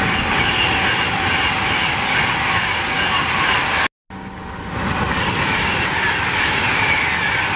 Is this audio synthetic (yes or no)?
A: no